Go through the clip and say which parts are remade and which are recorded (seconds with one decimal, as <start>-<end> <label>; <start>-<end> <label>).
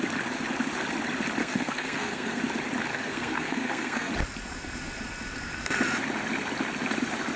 0.0-1.4 recorded; 1.4-2.4 remade; 2.4-2.9 recorded; 2.9-4.1 remade; 4.1-7.4 recorded